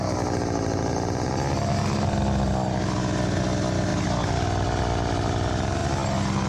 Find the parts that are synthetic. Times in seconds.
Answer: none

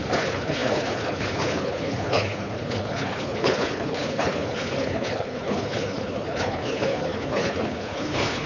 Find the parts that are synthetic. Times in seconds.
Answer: 0.0-8.5 (codec, HILCodec)